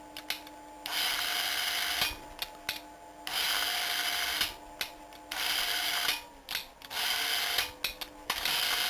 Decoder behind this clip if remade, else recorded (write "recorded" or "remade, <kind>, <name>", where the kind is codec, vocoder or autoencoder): recorded